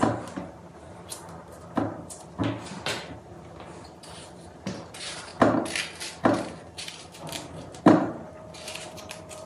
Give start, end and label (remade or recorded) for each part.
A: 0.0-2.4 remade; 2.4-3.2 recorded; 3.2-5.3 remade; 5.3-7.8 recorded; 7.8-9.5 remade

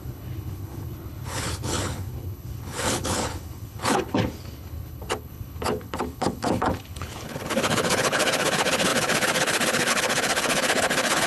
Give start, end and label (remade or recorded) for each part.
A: 0.0-11.3 remade